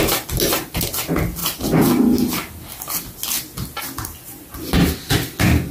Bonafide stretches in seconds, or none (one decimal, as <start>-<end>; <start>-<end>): 0.0-5.7